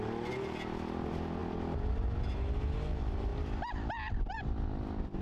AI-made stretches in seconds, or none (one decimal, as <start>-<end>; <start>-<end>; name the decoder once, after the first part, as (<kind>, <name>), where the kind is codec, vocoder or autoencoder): 3.3-4.4 (vocoder, BigVGAN v2)